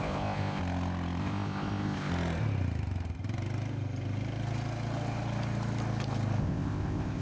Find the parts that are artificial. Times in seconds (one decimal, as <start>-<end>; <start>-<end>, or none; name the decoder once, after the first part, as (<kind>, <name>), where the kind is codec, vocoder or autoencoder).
0.0-0.6 (codec, ZipCodec); 1.2-2.1; 6.4-7.2